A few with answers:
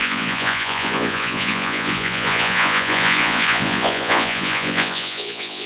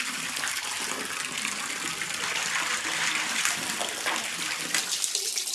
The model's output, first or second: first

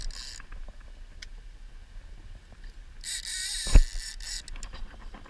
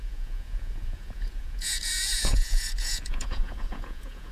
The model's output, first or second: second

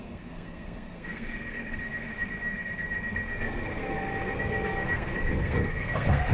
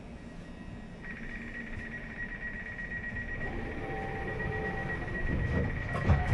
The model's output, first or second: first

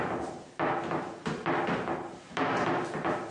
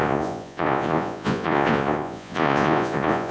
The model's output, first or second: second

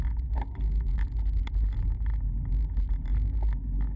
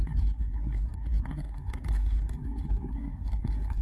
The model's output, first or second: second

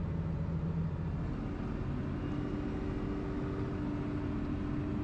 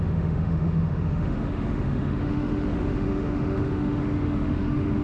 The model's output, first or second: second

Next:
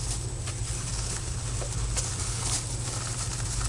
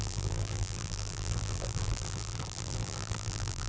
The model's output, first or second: second